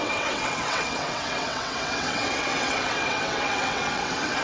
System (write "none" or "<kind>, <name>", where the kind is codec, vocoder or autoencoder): vocoder, WaveNeXt